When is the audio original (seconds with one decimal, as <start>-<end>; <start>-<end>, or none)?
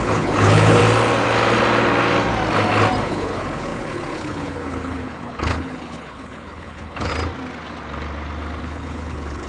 0.8-3.0; 7.1-8.6